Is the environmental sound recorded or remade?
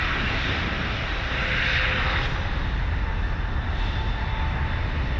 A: recorded